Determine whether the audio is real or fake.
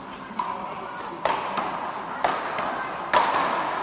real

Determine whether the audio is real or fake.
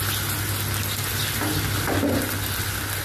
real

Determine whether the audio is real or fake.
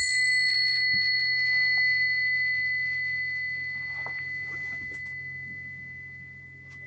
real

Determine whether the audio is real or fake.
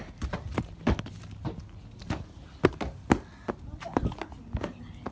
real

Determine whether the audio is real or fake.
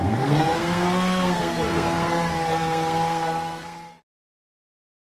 fake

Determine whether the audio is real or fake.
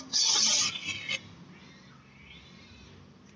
real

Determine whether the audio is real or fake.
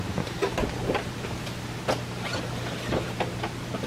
real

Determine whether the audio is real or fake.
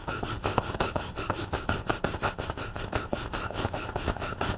fake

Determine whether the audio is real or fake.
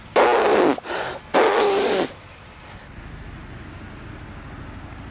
real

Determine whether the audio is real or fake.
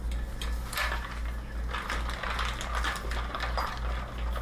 real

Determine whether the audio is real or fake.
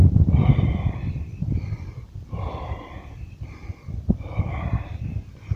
fake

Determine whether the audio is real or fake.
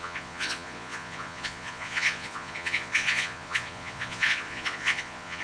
fake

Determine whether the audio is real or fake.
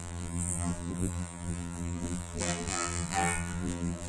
fake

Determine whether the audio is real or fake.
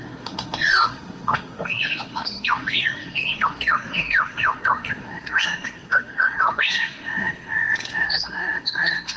fake